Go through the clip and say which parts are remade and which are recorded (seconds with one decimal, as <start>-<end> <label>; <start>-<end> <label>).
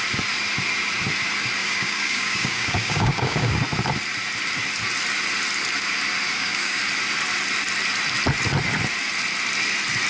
0.0-1.6 recorded; 1.6-3.6 remade; 3.6-6.3 recorded; 6.3-6.8 remade; 6.8-10.1 recorded